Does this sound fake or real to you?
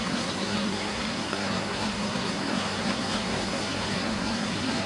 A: fake